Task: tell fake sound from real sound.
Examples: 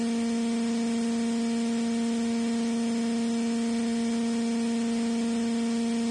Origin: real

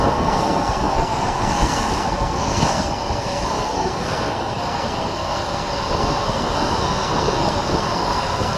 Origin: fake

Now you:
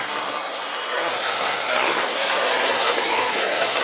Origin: fake